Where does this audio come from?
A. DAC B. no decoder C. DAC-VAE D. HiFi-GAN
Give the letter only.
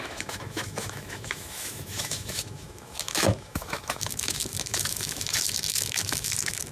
C